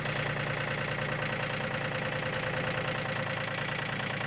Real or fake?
real